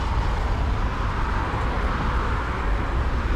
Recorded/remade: recorded